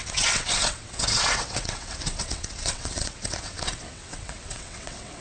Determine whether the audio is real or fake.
fake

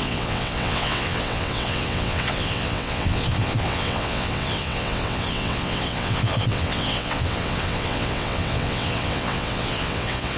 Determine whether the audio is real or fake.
fake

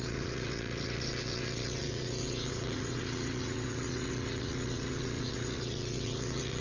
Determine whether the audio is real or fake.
fake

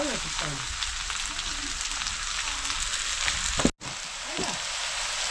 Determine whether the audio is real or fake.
real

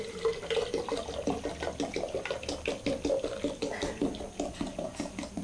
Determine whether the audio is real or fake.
real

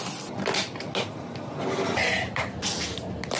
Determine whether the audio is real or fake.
real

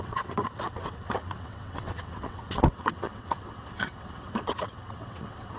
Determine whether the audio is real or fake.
fake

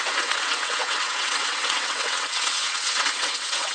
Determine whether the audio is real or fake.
fake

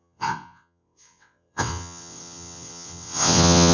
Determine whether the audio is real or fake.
fake